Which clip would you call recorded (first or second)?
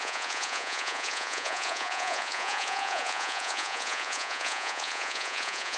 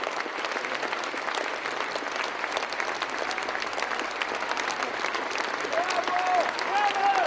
second